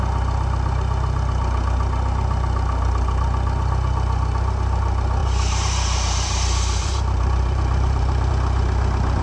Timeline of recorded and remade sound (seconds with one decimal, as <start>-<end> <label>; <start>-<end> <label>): 0.0-5.2 recorded; 5.2-8.3 remade; 8.3-9.2 recorded